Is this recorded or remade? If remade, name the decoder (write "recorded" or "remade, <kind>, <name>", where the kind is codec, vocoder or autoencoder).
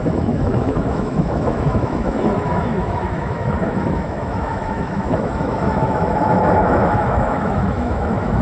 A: remade, autoencoder, DAC-VAE